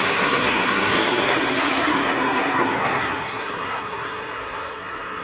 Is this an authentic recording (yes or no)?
no